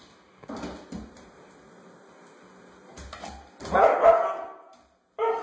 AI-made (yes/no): no